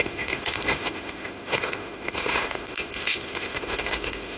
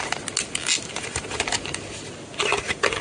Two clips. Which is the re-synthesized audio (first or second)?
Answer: first